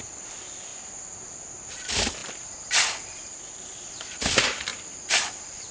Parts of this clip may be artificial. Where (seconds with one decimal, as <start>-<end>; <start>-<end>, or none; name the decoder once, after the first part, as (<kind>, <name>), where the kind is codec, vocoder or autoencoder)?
0.0-0.7 (vocoder, BigVGAN v2); 1.7-4.7; 5.3-5.7

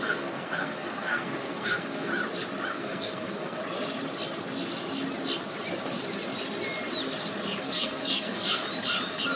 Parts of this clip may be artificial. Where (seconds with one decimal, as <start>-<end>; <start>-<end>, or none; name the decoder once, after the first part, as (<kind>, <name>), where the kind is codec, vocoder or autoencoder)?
0.0-2.1 (codec, SNAC); 2.7-3.6; 7.6-8.6